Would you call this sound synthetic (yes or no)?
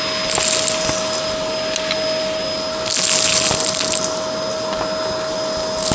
no